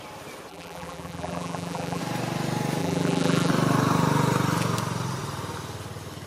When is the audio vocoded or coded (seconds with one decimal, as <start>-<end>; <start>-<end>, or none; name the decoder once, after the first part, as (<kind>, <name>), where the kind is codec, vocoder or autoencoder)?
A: 0.5-2.0 (vocoder, BigVGAN v2); 2.8-3.5